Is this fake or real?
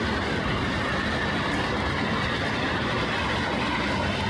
real